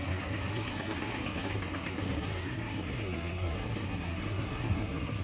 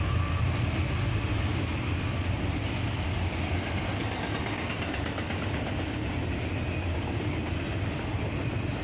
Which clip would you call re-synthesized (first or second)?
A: first